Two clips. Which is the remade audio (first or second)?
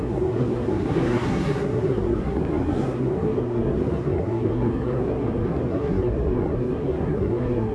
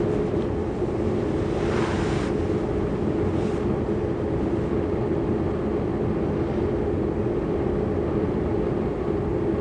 first